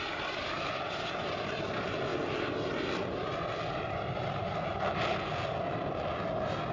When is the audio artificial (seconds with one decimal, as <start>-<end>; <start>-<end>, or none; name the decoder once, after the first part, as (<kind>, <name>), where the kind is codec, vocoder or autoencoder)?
0.0-2.1 (vocoder, BigVGAN v2); 5.6-6.7